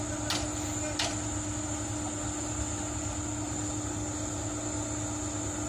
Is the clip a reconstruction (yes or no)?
no